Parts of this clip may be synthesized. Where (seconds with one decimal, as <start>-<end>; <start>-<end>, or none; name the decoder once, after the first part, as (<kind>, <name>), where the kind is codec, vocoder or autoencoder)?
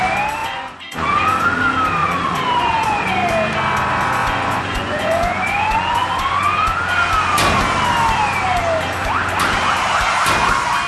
0.4-1.6 (vocoder, Vocos); 2.0-3.1; 4.2-6.8